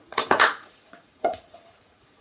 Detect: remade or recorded remade